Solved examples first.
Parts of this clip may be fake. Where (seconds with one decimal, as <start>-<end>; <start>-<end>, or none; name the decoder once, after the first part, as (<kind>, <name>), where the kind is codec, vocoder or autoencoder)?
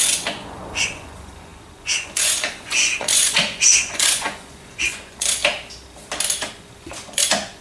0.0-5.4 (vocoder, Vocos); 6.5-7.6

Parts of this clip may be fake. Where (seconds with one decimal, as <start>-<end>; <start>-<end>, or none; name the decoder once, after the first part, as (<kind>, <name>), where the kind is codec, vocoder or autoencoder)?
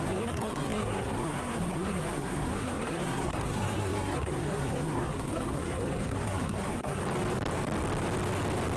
0.0-7.0 (codec, SNAC)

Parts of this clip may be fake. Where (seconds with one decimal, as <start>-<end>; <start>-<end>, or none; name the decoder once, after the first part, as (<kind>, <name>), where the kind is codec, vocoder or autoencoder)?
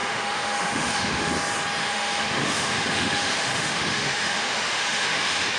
0.0-1.3 (autoencoder, DAC-VAE); 1.8-5.6